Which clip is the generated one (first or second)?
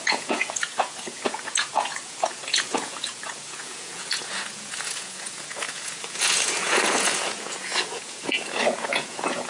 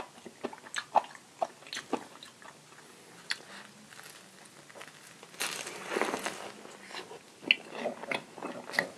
first